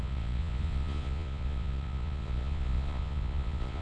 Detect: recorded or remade remade